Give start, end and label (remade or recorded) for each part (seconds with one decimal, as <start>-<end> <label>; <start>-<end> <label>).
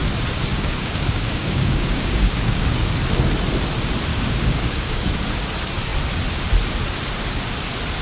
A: 0.0-0.5 recorded; 0.5-2.9 remade; 2.9-4.1 recorded; 4.1-5.1 remade; 5.1-8.0 recorded